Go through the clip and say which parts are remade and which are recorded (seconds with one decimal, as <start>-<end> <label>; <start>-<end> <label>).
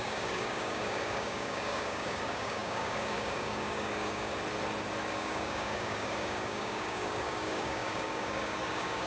0.0-4.3 remade; 4.3-5.1 recorded; 5.1-9.1 remade